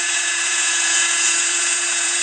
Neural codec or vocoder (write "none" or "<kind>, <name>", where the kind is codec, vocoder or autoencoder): vocoder, Vocos